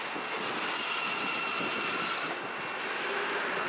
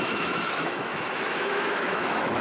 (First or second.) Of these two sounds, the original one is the first